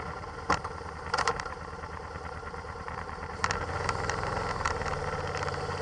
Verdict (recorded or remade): remade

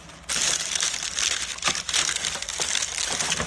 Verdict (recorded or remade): recorded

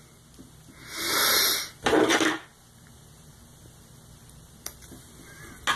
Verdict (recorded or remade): recorded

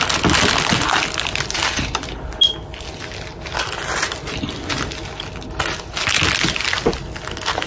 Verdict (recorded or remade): recorded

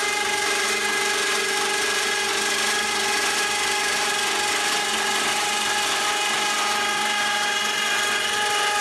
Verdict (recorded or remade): recorded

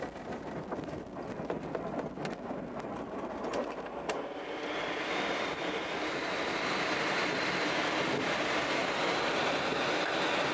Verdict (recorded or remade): recorded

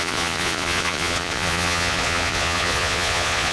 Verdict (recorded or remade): remade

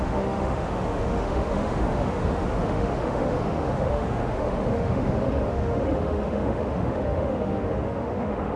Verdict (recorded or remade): remade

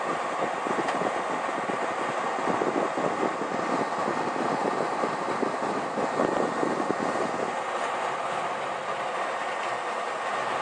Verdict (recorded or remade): recorded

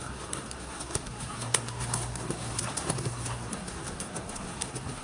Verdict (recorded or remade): remade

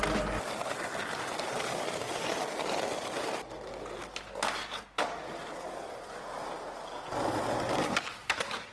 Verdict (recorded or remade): recorded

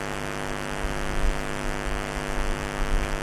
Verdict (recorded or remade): recorded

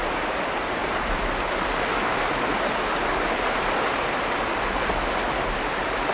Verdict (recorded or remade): recorded